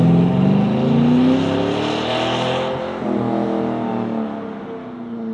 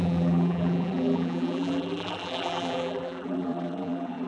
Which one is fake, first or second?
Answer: second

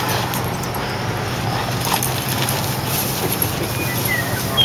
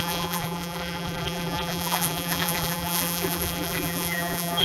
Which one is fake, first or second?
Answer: second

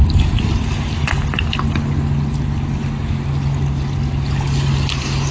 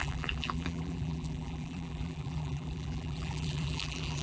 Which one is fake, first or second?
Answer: second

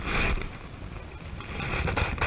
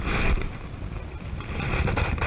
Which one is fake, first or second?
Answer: second